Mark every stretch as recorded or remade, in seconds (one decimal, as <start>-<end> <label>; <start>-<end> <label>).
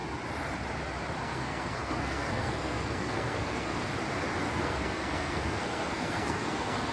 0.0-1.2 recorded; 1.2-3.9 remade; 3.9-4.4 recorded; 4.4-6.9 remade